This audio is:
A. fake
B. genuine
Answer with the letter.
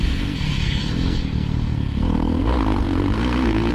A